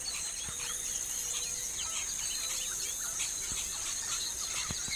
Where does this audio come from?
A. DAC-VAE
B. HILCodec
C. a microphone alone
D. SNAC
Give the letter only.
C